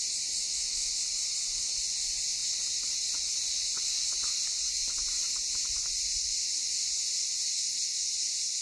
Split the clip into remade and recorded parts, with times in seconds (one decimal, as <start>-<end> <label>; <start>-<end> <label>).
0.0-0.4 recorded; 0.4-0.9 remade; 0.9-8.6 recorded